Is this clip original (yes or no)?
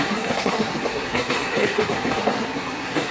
no